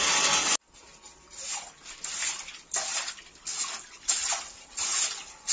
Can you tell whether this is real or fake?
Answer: real